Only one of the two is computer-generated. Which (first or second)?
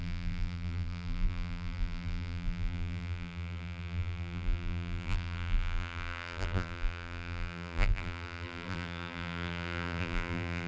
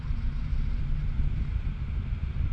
first